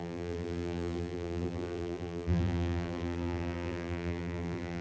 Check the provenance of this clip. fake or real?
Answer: fake